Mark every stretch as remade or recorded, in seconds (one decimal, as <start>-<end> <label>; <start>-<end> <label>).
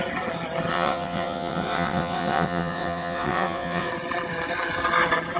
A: 0.0-0.7 recorded; 0.7-3.9 remade; 3.9-5.4 recorded